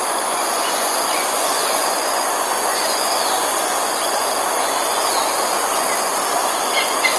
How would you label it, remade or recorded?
remade